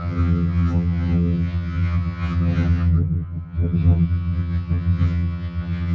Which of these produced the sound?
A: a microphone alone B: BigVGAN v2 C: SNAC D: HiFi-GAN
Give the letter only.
D